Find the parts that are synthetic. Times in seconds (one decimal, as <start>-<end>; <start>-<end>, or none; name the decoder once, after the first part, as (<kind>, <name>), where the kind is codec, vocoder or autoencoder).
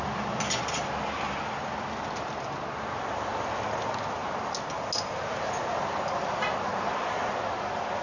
none